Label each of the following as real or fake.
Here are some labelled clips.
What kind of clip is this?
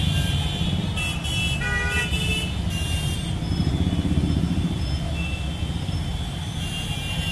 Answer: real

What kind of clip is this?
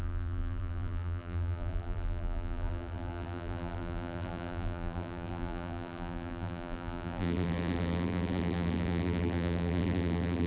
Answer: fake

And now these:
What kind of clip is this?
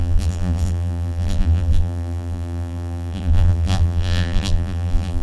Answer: fake